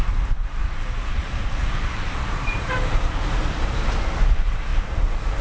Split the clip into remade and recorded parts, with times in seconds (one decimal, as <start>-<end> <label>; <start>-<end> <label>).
0.0-0.6 recorded; 0.6-3.8 remade; 3.8-5.4 recorded